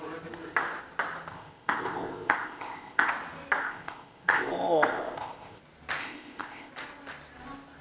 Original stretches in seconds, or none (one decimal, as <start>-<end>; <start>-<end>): 0.0-1.3; 3.1-3.6; 5.6-6.0; 6.7-7.8